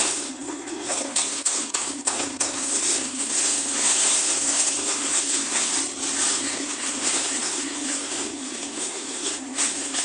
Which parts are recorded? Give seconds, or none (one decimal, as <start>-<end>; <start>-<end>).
5.7-6.3